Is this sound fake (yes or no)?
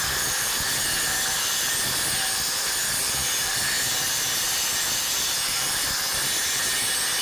yes